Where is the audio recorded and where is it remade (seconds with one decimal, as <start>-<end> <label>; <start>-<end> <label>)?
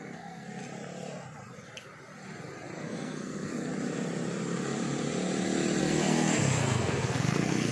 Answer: 0.0-0.6 remade; 0.6-2.8 recorded; 2.8-3.7 remade; 3.7-5.8 recorded; 5.8-7.7 remade